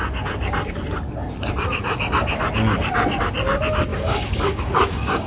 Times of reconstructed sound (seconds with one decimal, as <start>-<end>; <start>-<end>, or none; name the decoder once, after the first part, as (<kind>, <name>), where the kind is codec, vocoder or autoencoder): 3.9-5.3 (codec, DAC)